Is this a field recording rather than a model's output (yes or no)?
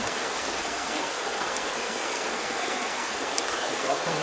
no